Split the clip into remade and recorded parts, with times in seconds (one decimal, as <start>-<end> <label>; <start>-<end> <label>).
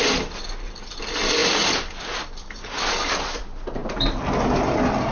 0.0-5.1 recorded